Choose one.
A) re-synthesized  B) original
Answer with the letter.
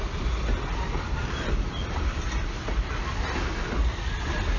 B